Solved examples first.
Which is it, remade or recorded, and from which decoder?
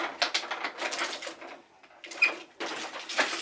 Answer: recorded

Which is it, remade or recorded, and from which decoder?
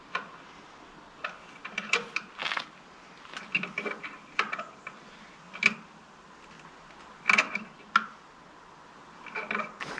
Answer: recorded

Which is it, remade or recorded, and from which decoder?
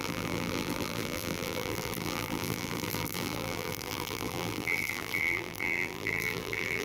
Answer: remade, vocoder, BigVGAN v2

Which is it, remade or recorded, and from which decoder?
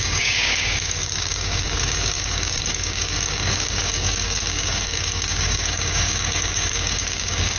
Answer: remade, codec, DAC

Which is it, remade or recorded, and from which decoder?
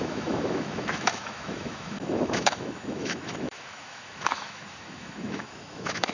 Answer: remade, autoencoder, DAC-VAE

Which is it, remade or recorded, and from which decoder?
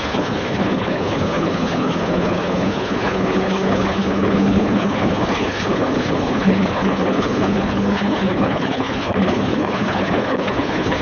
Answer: remade, codec, HILCodec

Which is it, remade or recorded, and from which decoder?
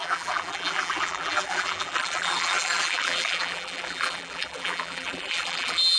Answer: remade, vocoder, BigVGAN v2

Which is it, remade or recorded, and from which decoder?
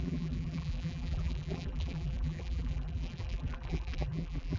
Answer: remade, vocoder, BigVGAN v2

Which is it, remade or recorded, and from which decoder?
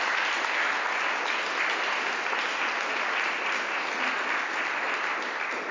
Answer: recorded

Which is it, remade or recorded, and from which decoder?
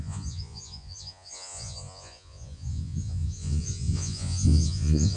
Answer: remade, vocoder, Vocos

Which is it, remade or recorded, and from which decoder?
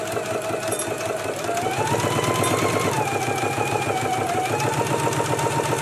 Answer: recorded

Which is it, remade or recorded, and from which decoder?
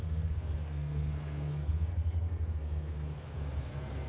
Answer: remade, codec, SNAC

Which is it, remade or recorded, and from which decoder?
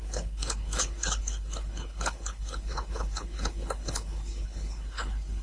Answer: remade, codec, HILCodec